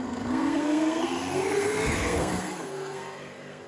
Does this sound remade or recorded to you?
remade